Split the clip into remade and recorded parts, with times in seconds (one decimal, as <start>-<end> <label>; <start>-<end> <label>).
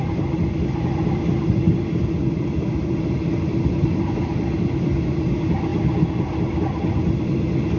0.0-7.8 recorded